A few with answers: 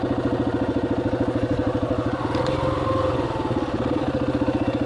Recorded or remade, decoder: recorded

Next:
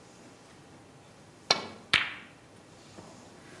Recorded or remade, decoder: recorded